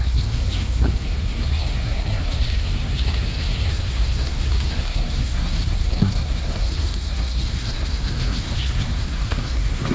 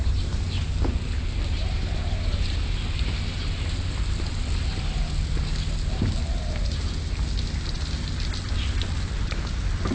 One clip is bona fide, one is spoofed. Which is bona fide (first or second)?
second